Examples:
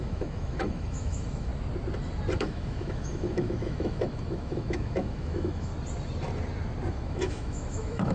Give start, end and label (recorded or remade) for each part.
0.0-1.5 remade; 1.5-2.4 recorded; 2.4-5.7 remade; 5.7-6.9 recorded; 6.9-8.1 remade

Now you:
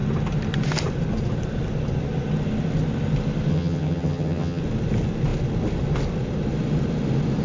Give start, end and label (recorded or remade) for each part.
0.0-3.5 recorded; 3.5-4.6 remade; 4.6-7.4 recorded